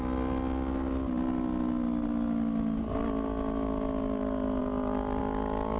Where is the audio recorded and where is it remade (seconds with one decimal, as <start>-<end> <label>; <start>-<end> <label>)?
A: 0.0-5.8 recorded

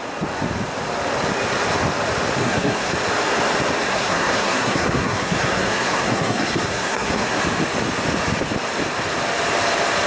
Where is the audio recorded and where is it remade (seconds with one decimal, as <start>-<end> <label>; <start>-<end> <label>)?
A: 0.0-2.4 recorded; 2.4-2.9 remade; 2.9-3.9 recorded; 3.9-7.4 remade; 7.4-10.1 recorded